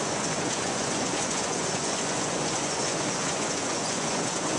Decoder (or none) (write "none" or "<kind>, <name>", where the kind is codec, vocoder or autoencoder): vocoder, Vocos